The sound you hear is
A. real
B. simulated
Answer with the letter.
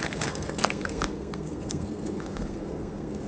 B